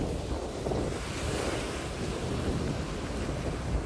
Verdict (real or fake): real